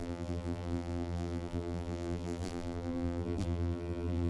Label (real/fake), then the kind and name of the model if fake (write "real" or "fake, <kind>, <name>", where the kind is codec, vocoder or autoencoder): fake, vocoder, BigVGAN v2